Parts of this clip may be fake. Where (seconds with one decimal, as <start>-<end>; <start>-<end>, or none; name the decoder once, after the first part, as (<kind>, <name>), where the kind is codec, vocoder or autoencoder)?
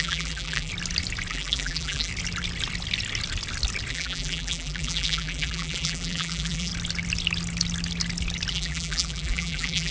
0.0-0.7 (vocoder, BigVGAN v2); 1.3-2.1; 3.9-6.7; 8.5-9.9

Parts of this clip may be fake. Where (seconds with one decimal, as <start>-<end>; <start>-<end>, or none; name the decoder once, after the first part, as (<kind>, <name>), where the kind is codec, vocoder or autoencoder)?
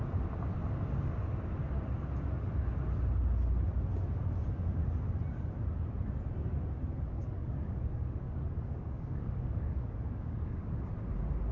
7.2-10.8 (codec, DAC)